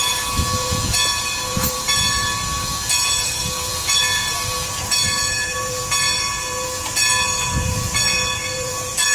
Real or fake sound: fake